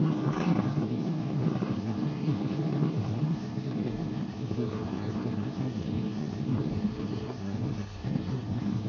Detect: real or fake fake